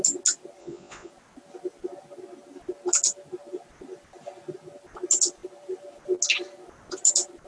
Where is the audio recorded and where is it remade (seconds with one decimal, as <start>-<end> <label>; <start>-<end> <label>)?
0.0-0.6 recorded; 0.6-1.1 remade; 1.1-7.5 recorded